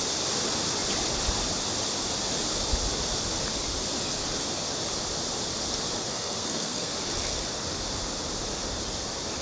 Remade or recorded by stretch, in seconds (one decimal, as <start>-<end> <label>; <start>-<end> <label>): 0.0-6.1 recorded; 6.1-6.9 remade; 6.9-9.4 recorded

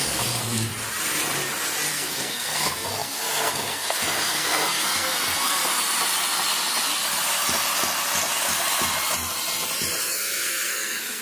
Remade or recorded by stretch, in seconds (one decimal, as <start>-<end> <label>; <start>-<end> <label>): 0.0-0.7 remade; 0.7-1.9 recorded; 1.9-5.6 remade; 5.6-10.0 recorded; 10.0-11.2 remade

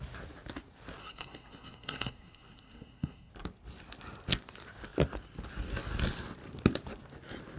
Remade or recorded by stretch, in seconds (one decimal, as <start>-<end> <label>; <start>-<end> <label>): 0.0-1.0 recorded; 1.0-3.3 remade; 3.3-7.6 recorded